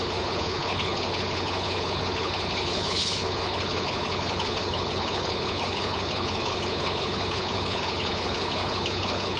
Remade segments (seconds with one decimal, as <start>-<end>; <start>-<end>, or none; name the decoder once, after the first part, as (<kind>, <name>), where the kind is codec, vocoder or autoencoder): 0.0-9.4 (codec, HILCodec)